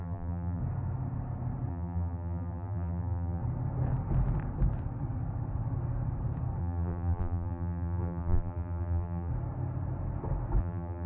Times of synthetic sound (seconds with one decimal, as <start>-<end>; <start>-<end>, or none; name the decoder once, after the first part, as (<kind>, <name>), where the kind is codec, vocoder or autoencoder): 0.0-0.6 (vocoder, BigVGAN v2); 1.7-3.4; 6.6-9.3; 10.6-11.1